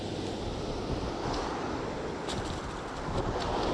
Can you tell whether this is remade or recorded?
recorded